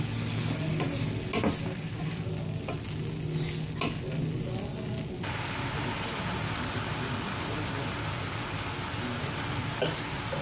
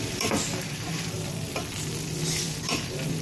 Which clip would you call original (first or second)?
first